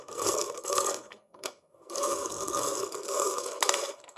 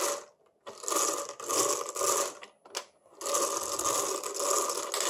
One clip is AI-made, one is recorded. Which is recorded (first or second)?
second